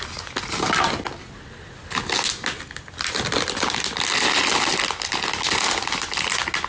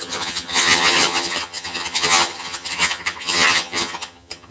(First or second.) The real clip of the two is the first